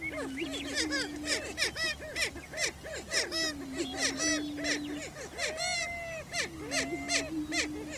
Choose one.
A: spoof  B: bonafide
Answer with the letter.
B